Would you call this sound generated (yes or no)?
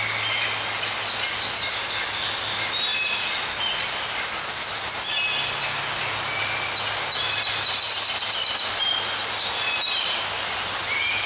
no